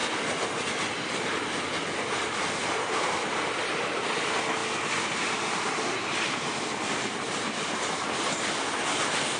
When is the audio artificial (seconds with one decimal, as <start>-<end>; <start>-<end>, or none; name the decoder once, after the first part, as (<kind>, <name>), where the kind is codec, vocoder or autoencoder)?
none